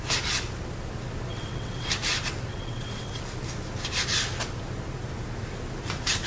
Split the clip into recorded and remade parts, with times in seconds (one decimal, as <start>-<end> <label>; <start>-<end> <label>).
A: 0.0-1.3 recorded; 1.3-1.9 remade; 1.9-2.5 recorded; 2.5-3.2 remade; 3.2-6.3 recorded